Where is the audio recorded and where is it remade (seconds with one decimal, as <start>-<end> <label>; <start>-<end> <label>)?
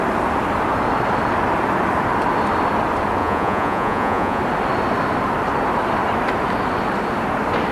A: 0.0-3.2 recorded; 3.2-4.4 remade; 4.4-7.7 recorded